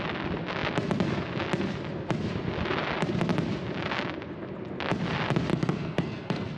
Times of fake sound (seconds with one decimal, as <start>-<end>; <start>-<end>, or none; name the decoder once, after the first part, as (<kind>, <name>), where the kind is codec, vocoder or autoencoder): 5.5-6.6 (codec, SNAC)